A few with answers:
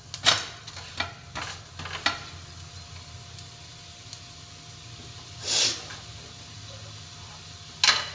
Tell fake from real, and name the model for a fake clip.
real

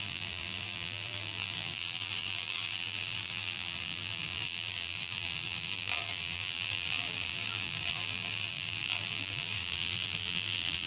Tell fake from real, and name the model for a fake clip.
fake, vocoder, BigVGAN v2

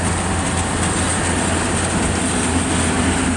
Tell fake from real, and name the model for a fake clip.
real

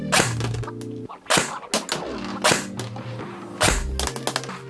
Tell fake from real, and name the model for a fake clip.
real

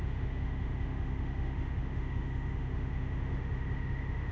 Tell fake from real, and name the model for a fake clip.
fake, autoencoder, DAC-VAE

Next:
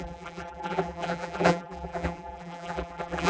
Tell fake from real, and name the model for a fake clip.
fake, vocoder, BigVGAN v2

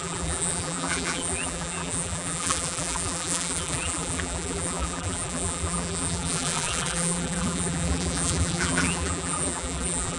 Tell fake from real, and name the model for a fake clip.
fake, vocoder, BigVGAN v2